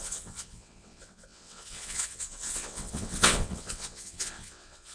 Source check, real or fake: fake